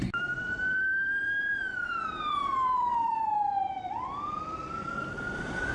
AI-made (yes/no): yes